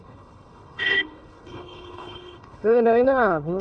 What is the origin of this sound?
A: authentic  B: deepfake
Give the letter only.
B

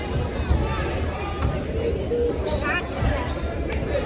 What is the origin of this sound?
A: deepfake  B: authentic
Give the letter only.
B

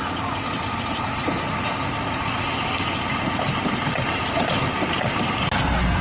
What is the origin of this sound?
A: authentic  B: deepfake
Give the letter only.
A